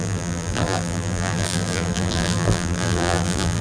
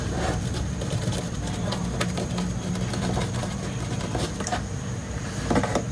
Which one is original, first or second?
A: second